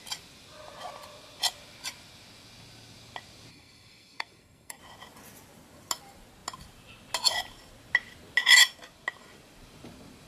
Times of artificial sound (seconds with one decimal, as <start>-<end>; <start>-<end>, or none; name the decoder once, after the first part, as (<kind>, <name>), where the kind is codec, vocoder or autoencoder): 3.5-4.8 (codec, SNAC)